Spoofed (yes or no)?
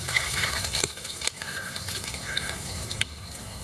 yes